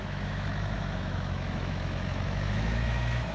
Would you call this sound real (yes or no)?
no